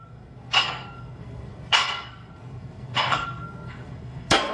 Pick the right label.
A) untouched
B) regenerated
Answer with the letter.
B